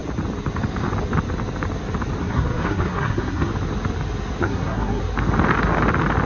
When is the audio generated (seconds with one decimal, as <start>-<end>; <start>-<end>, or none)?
2.2-3.5; 4.4-5.0